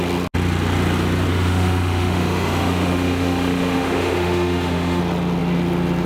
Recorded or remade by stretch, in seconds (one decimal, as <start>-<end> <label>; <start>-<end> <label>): 0.0-1.3 recorded; 1.3-5.0 remade; 5.0-6.1 recorded